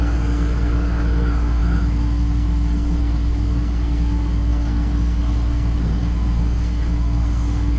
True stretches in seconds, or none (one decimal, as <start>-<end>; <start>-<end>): none